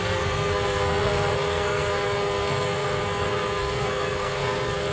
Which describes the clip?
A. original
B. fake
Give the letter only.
B